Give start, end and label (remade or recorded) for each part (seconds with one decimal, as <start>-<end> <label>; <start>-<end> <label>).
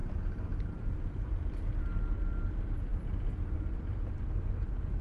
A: 0.0-1.7 remade; 1.7-2.9 recorded; 2.9-5.0 remade